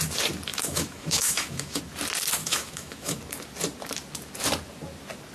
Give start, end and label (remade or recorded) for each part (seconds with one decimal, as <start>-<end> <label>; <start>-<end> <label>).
0.0-0.5 recorded; 0.5-1.8 remade; 1.8-2.4 recorded; 2.4-3.2 remade; 3.2-5.3 recorded